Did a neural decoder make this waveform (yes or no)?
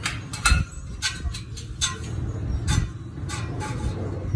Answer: no